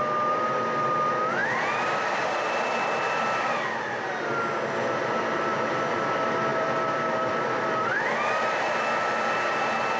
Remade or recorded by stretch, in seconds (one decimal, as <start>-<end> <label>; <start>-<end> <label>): 0.0-1.4 recorded; 1.4-3.2 remade; 3.2-5.5 recorded; 5.5-6.1 remade; 6.1-6.5 recorded; 6.5-8.2 remade; 8.2-10.0 recorded